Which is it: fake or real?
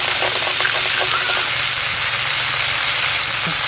real